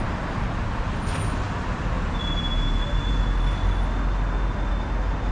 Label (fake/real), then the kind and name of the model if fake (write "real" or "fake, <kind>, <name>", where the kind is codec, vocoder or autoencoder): real